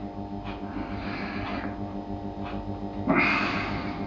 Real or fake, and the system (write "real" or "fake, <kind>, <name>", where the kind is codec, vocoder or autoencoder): real